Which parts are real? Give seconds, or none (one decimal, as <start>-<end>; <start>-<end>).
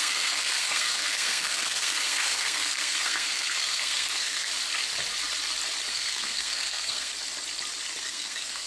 4.5-5.9; 7.1-8.0